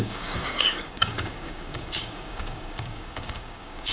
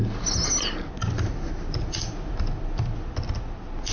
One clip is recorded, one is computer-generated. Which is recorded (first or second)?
second